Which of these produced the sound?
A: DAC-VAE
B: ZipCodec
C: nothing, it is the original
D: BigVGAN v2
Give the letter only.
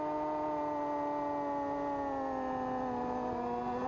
C